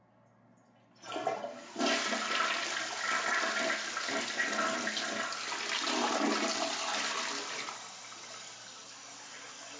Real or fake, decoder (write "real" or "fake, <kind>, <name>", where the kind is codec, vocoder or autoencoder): real